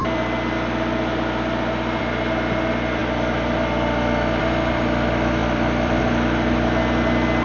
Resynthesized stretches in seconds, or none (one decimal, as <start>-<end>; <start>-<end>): 5.4-6.0